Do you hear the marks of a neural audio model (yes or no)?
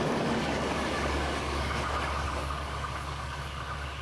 yes